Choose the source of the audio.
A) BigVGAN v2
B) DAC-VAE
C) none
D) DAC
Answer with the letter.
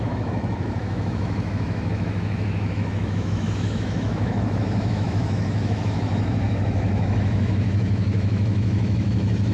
B